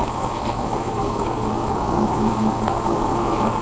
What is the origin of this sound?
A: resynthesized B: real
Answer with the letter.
A